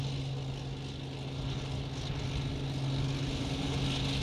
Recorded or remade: recorded